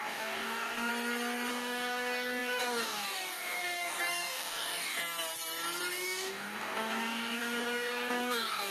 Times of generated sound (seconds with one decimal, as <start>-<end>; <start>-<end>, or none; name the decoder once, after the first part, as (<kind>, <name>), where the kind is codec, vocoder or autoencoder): 0.0-0.9 (codec, DAC); 1.5-5.0; 5.9-8.7